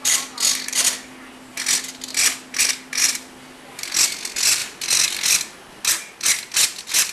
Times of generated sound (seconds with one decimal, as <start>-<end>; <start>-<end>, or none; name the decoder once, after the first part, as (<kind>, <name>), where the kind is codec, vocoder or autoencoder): none